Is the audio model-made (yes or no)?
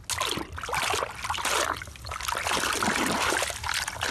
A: no